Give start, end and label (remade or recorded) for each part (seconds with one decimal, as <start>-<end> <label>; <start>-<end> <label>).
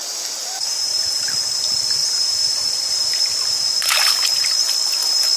0.0-0.4 recorded; 0.4-1.3 remade; 1.3-2.0 recorded; 2.0-3.6 remade; 3.6-5.4 recorded